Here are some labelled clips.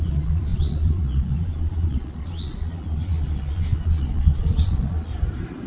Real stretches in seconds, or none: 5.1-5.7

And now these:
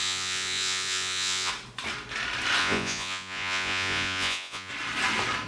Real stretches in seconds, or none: 1.5-2.6; 4.7-5.5

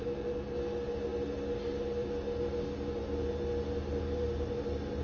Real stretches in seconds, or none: 0.0-5.0